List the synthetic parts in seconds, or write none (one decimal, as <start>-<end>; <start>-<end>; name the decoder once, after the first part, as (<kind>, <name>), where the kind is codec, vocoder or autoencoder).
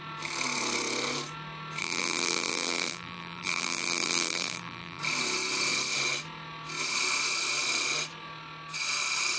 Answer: 1.8-5.0 (vocoder, BigVGAN v2)